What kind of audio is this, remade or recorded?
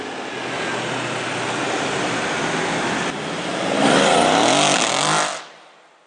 recorded